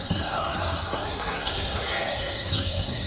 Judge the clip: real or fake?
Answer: fake